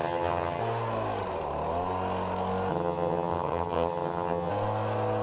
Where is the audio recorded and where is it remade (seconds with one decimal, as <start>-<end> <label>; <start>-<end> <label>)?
0.0-0.6 remade; 0.6-2.7 recorded; 2.7-4.5 remade; 4.5-5.2 recorded